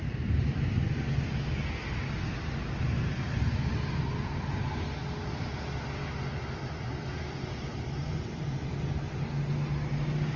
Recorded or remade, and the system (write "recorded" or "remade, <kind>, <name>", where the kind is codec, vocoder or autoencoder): recorded